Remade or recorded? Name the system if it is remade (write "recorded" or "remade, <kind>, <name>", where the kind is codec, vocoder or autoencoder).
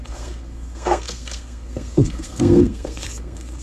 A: remade, codec, SNAC